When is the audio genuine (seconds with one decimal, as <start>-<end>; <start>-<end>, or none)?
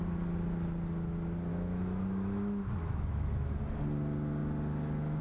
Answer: 0.0-1.5; 3.6-5.2